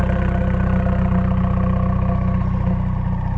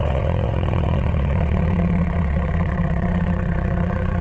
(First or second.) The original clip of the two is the first